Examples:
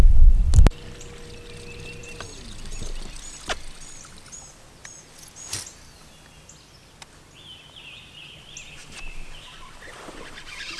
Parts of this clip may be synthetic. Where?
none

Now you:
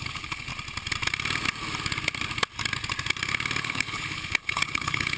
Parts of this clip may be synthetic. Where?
0.0-0.5; 3.6-5.2

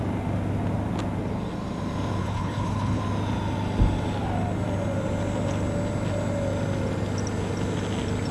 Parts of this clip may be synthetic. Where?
2.2-3.0

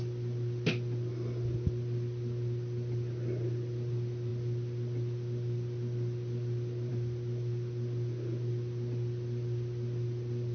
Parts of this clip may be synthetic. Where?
none

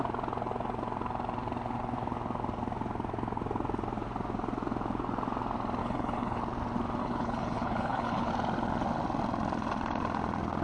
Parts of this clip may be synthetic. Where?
5.8-6.4; 7.0-8.3

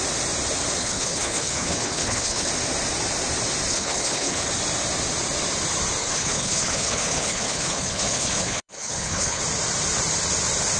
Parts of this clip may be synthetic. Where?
0.8-2.5; 3.7-4.5; 6.0-9.4